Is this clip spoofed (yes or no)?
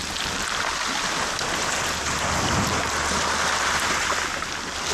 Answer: no